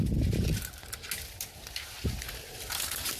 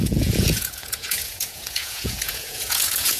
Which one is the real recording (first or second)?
first